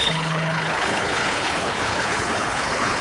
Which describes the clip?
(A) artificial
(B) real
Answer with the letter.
A